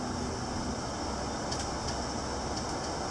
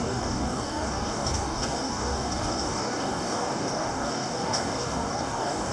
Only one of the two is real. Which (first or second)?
first